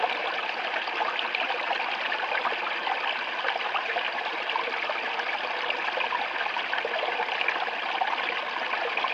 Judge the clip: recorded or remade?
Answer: recorded